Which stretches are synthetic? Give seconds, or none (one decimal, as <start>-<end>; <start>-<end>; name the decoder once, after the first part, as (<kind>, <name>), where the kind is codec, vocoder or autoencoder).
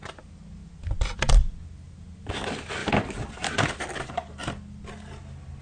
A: none